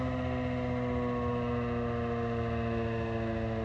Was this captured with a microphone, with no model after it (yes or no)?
yes